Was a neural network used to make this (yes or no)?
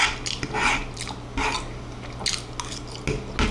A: no